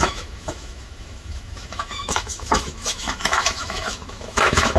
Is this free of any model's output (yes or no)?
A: no